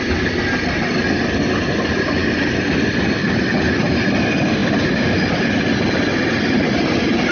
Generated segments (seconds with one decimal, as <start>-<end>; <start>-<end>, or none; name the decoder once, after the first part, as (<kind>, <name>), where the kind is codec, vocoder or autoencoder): none